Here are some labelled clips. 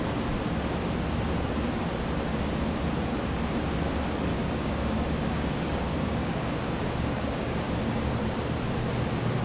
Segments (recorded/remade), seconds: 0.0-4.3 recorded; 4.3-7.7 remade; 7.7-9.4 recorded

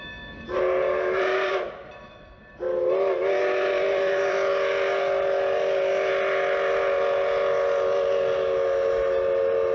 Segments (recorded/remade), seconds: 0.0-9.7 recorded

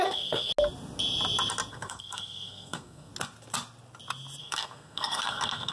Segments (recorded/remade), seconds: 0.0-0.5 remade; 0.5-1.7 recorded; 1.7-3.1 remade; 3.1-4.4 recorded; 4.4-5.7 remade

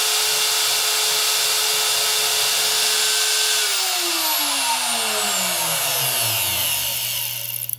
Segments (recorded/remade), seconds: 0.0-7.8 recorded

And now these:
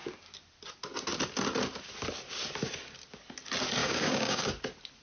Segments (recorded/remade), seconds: 0.0-3.8 recorded; 3.8-4.5 remade; 4.5-5.0 recorded

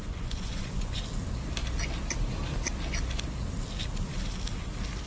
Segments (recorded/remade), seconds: 0.0-1.0 remade; 1.0-5.1 recorded